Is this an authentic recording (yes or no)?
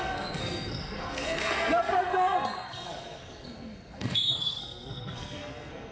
no